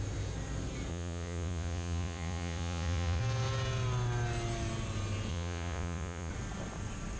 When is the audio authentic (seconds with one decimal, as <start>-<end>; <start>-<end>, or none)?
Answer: 0.0-0.9; 3.2-5.3; 6.3-7.2